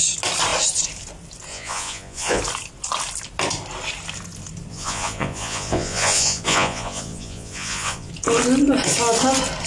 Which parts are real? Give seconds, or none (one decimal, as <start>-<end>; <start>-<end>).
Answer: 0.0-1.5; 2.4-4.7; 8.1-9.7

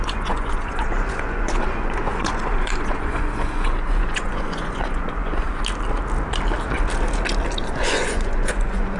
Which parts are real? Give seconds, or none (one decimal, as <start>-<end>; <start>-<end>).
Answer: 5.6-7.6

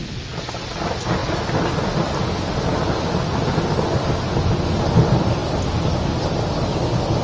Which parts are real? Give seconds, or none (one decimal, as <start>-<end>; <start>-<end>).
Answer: 0.0-7.2

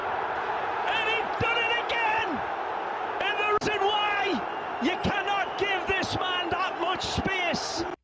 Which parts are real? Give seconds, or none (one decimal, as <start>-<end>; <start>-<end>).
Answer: 0.0-8.0